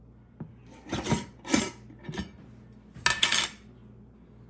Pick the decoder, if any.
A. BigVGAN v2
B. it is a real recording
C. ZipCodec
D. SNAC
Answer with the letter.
B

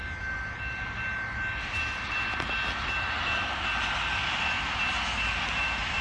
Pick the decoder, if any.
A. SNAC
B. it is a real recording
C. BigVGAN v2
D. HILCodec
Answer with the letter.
B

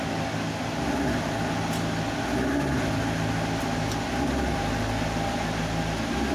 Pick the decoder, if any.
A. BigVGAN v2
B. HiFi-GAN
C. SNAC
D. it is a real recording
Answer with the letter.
D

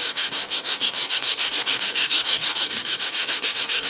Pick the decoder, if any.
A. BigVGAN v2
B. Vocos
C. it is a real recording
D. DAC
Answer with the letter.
D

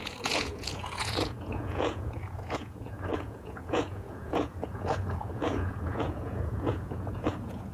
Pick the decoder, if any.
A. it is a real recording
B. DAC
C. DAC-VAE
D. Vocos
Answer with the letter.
D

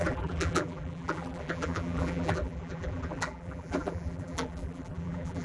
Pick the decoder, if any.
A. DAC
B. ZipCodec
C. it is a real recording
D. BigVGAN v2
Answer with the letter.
D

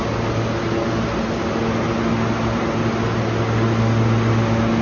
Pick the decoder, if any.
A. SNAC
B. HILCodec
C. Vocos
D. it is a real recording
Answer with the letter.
D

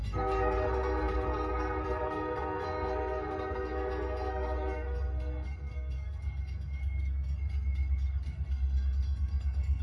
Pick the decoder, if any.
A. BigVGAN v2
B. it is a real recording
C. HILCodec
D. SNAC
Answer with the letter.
D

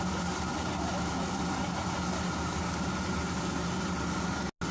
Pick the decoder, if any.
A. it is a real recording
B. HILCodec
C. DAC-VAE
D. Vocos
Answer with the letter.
A